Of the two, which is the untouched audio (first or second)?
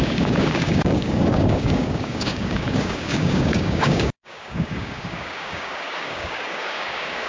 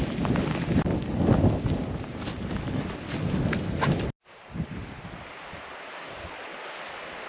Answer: second